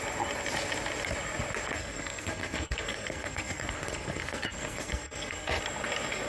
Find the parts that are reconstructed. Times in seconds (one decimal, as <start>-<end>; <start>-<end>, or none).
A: 1.8-5.6